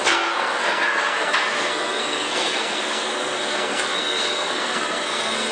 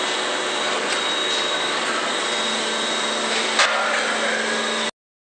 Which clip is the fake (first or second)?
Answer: first